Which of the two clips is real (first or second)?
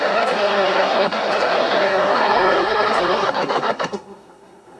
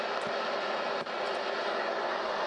second